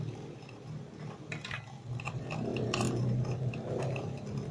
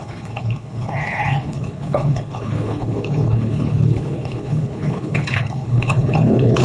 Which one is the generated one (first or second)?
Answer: second